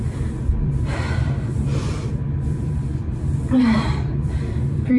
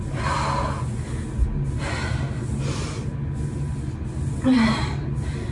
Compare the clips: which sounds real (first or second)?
second